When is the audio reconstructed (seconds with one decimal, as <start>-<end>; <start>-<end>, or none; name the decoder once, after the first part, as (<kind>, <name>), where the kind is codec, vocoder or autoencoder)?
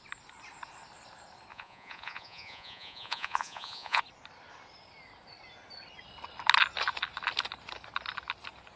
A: 1.5-4.0 (vocoder, Vocos)